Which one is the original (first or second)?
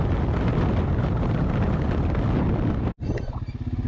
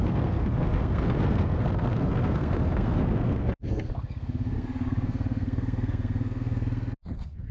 first